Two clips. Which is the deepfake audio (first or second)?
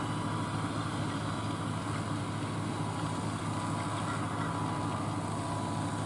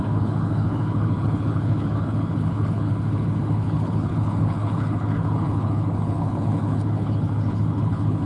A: second